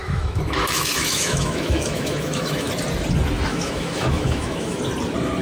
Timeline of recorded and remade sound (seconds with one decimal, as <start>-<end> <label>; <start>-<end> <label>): 0.0-2.7 remade; 2.7-3.5 recorded; 3.5-4.8 remade; 4.8-5.4 recorded